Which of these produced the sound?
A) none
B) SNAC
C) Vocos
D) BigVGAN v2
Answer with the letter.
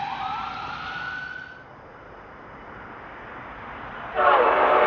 A